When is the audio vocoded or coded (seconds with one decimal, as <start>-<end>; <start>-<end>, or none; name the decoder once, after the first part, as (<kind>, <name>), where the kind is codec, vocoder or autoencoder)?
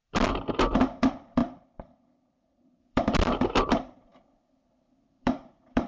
0.0-5.9 (vocoder, BigVGAN v2)